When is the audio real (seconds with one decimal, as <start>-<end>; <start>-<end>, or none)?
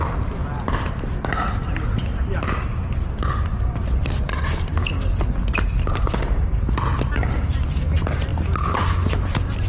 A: 0.0-9.7